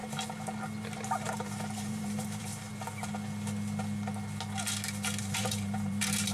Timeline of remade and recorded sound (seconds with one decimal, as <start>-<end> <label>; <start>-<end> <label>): 0.0-1.3 recorded; 1.3-2.5 remade; 2.5-5.2 recorded; 5.2-6.3 remade